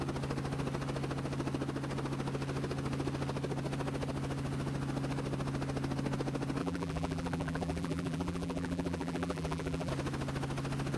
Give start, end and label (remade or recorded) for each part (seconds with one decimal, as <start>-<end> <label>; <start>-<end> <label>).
0.0-6.6 recorded; 6.6-9.9 remade; 9.9-11.0 recorded